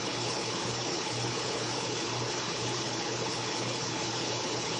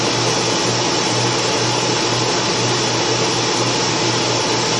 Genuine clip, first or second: second